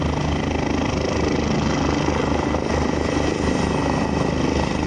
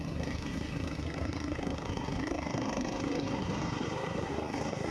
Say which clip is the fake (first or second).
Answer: second